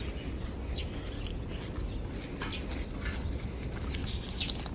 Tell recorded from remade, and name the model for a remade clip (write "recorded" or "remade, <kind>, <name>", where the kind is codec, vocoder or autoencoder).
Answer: recorded